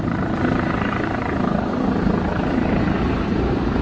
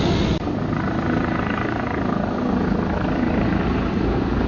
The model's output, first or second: first